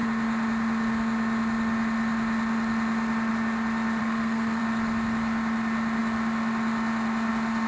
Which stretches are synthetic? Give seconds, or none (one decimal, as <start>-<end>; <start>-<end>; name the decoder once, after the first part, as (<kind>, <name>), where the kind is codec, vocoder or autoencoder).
4.0-4.6 (codec, SNAC)